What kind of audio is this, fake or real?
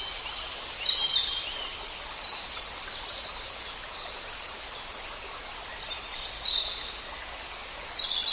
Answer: real